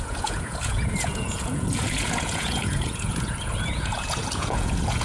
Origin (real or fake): fake